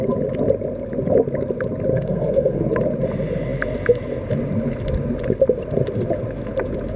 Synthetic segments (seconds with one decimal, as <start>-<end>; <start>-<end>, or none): 1.9-2.6